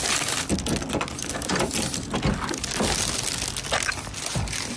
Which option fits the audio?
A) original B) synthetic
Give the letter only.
A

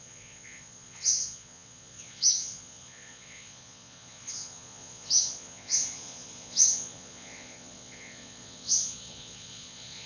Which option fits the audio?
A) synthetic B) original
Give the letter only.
A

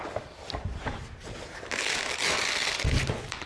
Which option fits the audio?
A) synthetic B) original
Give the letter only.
B